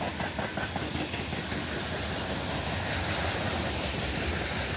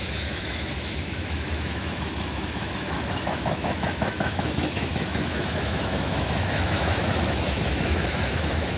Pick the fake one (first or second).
second